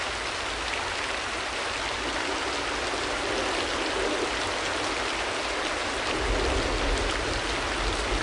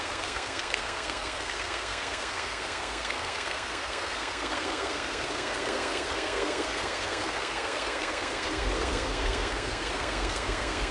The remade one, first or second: second